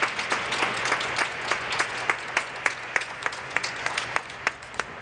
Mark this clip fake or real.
fake